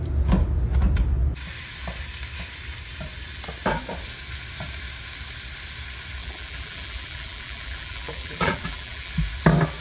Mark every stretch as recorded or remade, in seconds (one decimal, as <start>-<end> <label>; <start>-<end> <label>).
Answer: 0.0-6.2 recorded; 6.2-9.1 remade; 9.1-9.8 recorded